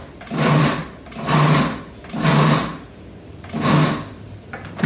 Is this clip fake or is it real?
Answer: real